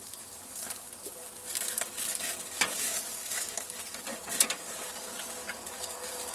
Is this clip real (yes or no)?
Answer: no